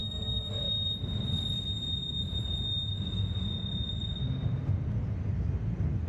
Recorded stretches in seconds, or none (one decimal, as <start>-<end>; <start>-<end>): 0.5-6.1